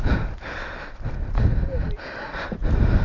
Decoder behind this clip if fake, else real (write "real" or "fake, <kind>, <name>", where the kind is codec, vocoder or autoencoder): real